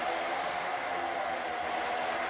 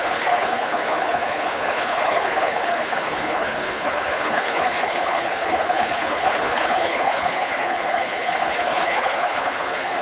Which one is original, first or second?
first